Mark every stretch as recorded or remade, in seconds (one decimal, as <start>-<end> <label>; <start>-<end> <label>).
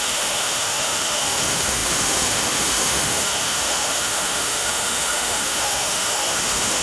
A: 0.0-6.8 remade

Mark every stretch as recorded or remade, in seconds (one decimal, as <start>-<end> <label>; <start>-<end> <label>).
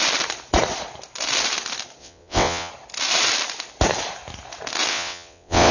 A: 0.0-2.0 recorded; 2.0-2.7 remade; 2.7-4.9 recorded; 4.9-5.7 remade